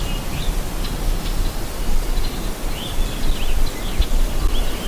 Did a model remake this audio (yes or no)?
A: no